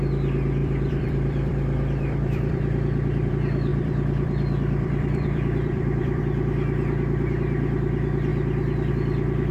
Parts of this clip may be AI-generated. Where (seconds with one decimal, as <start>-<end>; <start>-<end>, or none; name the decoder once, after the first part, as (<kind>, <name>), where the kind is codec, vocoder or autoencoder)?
0.6-3.3 (vocoder, BigVGAN v2); 3.7-6.2